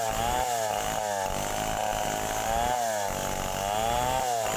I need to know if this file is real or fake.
real